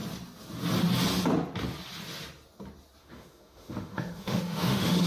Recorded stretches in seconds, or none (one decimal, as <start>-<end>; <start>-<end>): 0.0-3.0